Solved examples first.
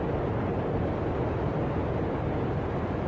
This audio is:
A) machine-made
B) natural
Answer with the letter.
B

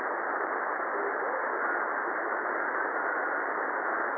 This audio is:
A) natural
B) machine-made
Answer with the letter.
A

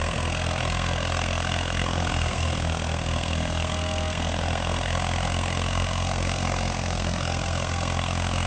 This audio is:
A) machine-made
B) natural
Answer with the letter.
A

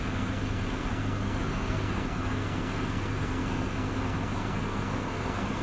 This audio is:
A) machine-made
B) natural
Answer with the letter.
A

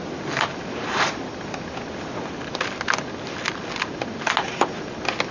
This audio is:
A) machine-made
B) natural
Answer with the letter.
B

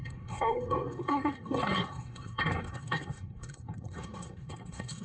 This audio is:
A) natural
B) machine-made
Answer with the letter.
B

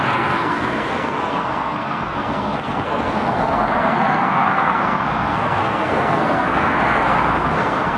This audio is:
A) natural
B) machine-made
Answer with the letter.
B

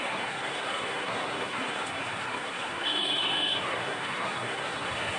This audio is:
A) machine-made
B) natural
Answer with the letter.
A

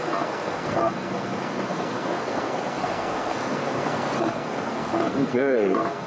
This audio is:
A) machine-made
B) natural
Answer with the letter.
A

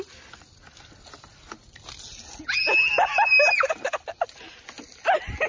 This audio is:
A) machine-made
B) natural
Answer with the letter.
B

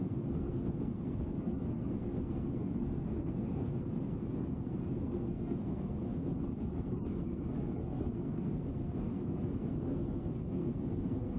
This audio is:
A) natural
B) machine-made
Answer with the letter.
B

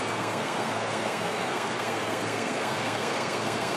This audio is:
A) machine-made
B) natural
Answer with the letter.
A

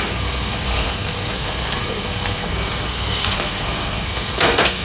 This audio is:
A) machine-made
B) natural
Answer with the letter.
A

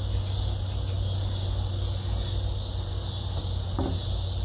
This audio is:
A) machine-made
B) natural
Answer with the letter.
B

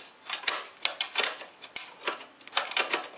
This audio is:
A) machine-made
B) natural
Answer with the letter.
B